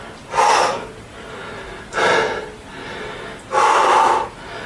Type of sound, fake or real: real